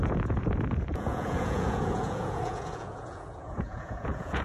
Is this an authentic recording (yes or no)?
no